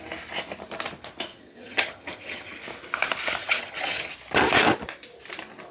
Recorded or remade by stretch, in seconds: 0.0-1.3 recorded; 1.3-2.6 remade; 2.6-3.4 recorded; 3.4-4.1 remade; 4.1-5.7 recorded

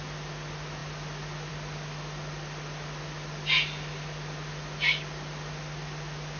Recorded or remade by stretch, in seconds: 0.0-6.4 recorded

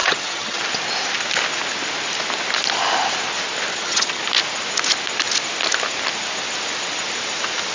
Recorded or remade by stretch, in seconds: 0.0-0.6 remade; 0.6-3.7 recorded; 3.7-4.2 remade; 4.2-7.7 recorded